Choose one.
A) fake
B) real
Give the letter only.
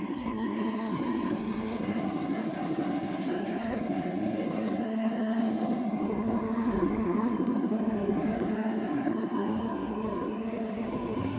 A